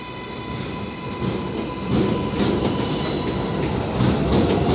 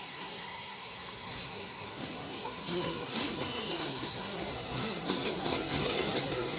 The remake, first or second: second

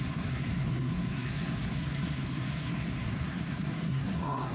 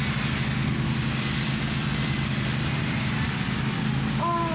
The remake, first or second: first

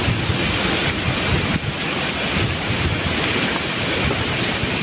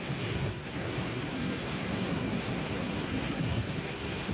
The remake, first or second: second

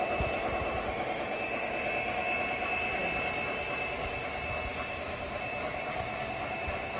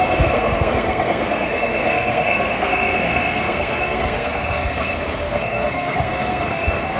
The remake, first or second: second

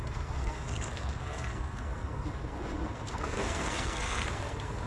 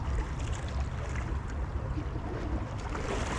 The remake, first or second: first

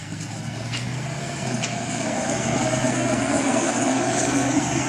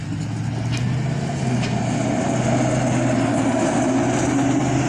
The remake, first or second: first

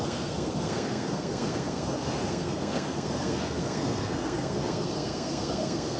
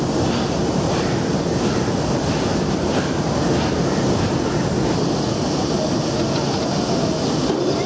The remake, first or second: first